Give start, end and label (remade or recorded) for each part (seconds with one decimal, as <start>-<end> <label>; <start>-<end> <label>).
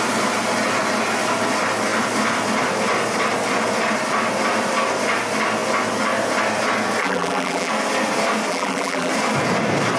0.0-7.0 recorded; 7.0-7.7 remade; 7.7-8.5 recorded; 8.5-9.1 remade; 9.1-10.0 recorded